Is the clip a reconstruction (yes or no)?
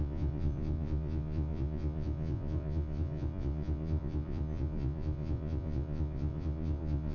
yes